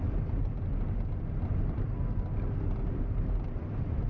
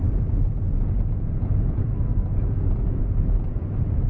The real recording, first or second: first